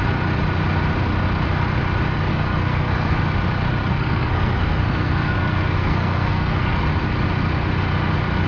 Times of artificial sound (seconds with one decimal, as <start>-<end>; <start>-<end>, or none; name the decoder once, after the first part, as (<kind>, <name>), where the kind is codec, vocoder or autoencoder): 2.3-3.2 (codec, SNAC); 3.8-6.8